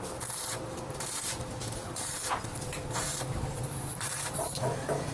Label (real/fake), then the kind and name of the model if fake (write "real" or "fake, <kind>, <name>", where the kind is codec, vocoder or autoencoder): fake, vocoder, BigVGAN v2